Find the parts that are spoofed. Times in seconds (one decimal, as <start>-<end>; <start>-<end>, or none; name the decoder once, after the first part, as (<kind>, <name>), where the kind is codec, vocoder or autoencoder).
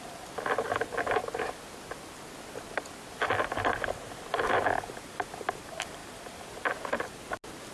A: none